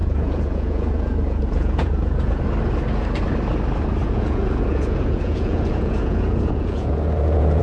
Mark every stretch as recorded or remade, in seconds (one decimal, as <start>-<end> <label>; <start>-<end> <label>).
0.0-2.4 remade; 2.4-4.0 recorded; 4.0-7.6 remade